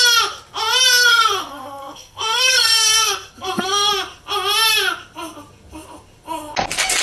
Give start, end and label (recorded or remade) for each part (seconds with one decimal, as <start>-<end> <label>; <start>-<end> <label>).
0.0-1.1 recorded; 1.1-3.9 remade; 3.9-7.0 recorded